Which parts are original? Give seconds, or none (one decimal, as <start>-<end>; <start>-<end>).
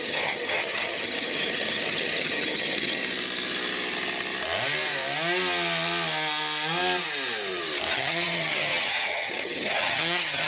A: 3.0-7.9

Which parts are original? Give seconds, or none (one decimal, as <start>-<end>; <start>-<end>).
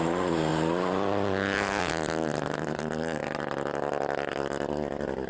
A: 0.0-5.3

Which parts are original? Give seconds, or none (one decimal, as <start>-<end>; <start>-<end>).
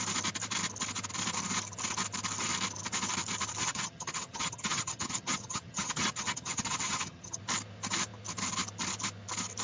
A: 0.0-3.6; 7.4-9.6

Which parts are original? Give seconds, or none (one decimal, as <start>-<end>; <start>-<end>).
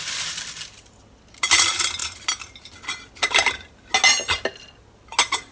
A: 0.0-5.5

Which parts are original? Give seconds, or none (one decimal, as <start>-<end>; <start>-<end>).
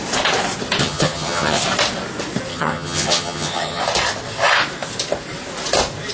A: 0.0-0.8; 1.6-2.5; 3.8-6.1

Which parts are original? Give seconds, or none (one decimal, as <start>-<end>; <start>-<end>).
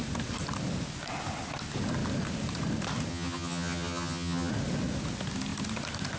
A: 0.0-3.1; 4.5-6.2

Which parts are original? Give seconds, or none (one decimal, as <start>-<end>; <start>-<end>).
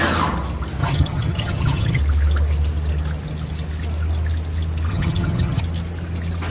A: 0.0-0.8; 2.0-4.9; 5.6-6.5